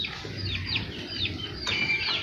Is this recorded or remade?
recorded